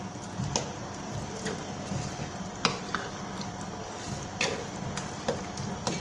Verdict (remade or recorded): recorded